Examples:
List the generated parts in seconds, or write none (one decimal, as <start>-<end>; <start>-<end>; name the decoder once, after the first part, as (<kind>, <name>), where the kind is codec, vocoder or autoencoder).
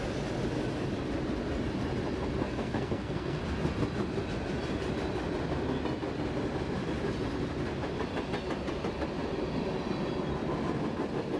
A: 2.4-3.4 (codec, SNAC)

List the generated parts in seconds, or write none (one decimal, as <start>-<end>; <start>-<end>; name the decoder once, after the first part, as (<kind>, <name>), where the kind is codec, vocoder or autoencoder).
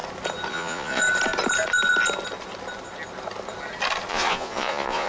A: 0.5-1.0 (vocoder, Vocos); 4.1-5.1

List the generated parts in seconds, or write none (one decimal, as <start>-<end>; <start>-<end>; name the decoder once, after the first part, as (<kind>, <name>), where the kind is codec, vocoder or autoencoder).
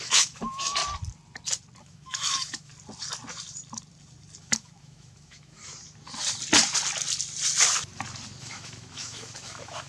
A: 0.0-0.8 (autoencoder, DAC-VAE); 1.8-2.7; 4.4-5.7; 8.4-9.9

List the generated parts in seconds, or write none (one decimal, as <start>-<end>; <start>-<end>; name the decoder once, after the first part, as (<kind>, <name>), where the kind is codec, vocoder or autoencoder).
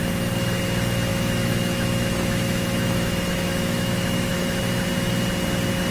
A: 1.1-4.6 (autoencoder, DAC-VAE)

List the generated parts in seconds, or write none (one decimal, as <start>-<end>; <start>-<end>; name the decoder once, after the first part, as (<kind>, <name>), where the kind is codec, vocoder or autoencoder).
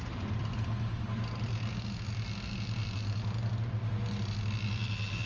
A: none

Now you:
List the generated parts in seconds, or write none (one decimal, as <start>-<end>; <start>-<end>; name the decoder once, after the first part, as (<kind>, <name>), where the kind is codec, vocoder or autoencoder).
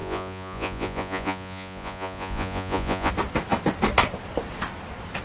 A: 0.0-3.1 (vocoder, Vocos)